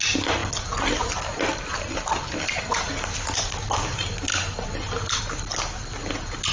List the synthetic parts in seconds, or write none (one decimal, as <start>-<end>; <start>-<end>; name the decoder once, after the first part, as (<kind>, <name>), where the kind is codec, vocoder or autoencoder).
none